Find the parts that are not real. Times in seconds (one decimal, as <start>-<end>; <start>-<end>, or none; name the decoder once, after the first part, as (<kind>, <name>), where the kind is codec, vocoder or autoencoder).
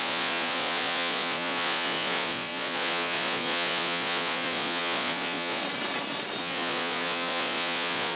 0.0-5.6 (vocoder, Vocos); 6.4-8.2